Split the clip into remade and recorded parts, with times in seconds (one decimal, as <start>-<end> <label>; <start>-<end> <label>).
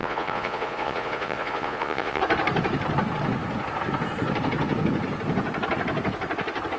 0.0-2.2 remade; 2.2-6.8 recorded